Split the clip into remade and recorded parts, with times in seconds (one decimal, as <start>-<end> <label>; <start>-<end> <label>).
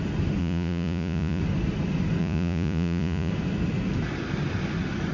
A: 0.0-0.4 recorded; 0.4-1.4 remade; 1.4-2.2 recorded; 2.2-3.3 remade; 3.3-5.1 recorded